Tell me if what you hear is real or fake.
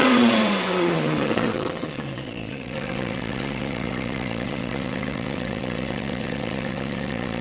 fake